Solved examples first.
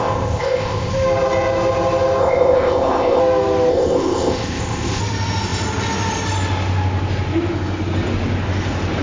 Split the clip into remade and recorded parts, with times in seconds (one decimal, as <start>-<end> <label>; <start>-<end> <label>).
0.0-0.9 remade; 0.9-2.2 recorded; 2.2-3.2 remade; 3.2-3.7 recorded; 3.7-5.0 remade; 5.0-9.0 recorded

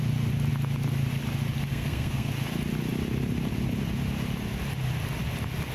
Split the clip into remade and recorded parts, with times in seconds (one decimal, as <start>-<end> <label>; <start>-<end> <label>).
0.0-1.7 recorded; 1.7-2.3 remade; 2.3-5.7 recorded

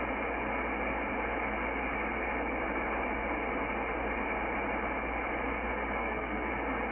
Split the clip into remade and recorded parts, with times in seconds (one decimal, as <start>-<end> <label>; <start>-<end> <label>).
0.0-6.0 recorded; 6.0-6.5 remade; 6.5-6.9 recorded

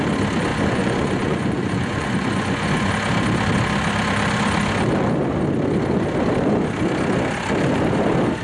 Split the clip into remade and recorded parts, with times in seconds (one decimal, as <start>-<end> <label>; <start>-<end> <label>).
0.0-0.5 recorded; 0.5-2.9 remade; 2.9-8.4 recorded

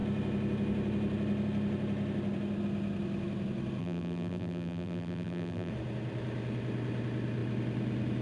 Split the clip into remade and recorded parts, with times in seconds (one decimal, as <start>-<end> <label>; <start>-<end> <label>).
0.0-3.8 recorded; 3.8-5.7 remade; 5.7-8.2 recorded

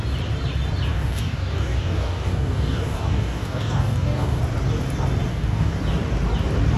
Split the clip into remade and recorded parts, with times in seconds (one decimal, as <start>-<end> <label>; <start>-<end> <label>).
0.0-0.9 recorded; 0.9-4.4 remade; 4.4-5.3 recorded; 5.3-5.8 remade; 5.8-6.8 recorded

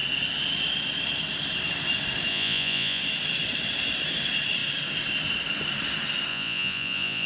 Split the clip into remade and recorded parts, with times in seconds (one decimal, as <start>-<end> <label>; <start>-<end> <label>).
0.0-2.3 recorded; 2.3-3.0 remade; 3.0-6.3 recorded; 6.3-7.3 remade